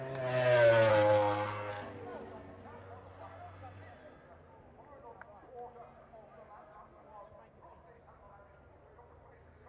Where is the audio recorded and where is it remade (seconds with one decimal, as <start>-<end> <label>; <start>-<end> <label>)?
0.0-0.9 recorded; 0.9-1.7 remade; 1.7-9.7 recorded